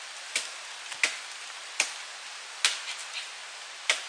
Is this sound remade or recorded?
recorded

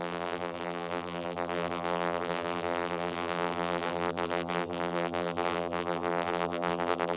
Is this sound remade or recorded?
remade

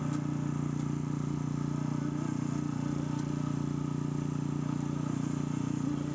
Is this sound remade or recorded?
recorded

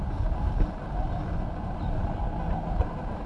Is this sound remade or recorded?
recorded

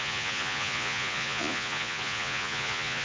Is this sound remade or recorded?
remade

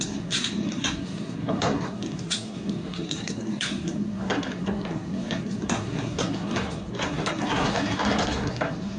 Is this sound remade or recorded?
remade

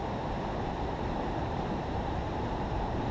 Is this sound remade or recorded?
remade